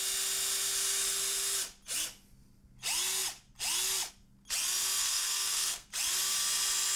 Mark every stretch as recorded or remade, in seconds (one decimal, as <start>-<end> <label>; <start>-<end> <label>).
0.0-5.0 recorded; 5.0-5.9 remade; 5.9-7.0 recorded